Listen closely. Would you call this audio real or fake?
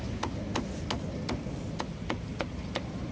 real